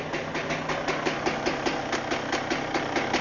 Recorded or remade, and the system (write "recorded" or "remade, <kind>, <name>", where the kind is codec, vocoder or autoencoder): recorded